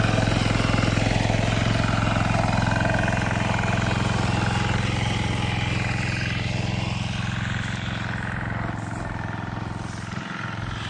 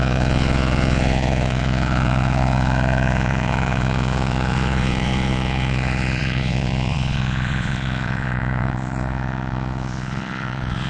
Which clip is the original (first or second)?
first